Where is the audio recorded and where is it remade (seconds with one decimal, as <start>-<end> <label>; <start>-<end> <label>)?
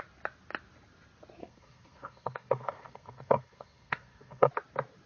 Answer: 0.0-1.4 recorded; 1.4-4.5 remade; 4.5-5.1 recorded